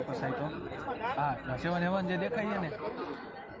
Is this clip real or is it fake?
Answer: real